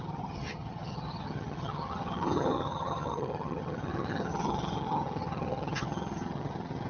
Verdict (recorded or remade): remade